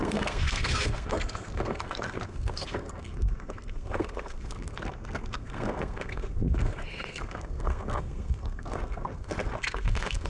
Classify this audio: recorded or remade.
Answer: remade